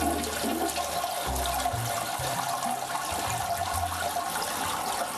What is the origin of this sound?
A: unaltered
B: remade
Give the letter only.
A